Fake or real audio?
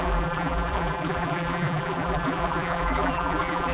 fake